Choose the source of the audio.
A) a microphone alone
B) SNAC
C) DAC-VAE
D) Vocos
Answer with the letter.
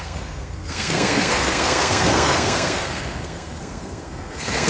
B